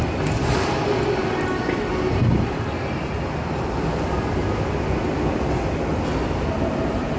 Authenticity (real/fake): real